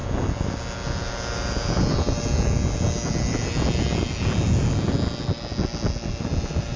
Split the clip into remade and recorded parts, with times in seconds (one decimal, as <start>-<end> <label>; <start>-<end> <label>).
0.0-6.8 recorded